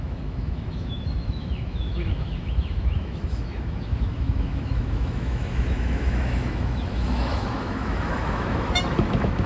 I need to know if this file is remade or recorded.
remade